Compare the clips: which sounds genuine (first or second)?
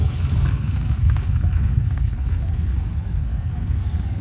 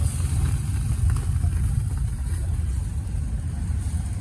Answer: second